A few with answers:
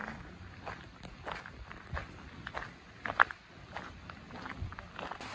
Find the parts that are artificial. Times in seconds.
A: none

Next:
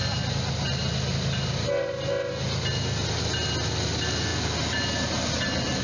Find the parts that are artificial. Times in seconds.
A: none